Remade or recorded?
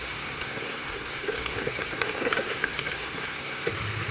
remade